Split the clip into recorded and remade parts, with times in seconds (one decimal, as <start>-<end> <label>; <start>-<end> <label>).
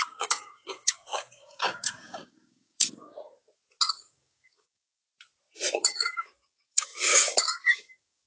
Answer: 0.0-3.1 remade; 3.1-3.9 recorded; 3.9-5.0 remade; 5.0-5.7 recorded; 5.7-8.3 remade